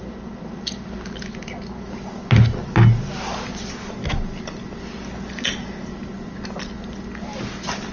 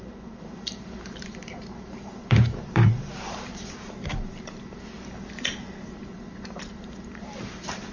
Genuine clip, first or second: first